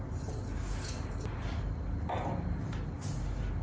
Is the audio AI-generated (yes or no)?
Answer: no